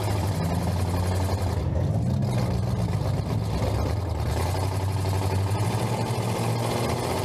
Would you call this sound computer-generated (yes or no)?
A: no